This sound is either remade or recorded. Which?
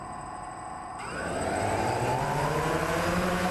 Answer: remade